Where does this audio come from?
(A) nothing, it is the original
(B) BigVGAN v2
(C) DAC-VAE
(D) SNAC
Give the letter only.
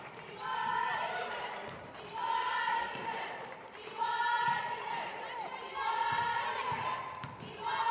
B